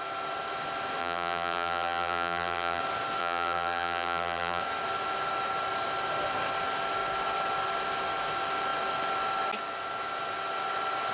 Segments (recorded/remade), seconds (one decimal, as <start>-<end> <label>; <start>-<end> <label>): 0.0-1.0 recorded; 1.0-2.8 remade; 2.8-3.2 recorded; 3.2-4.6 remade; 4.6-11.1 recorded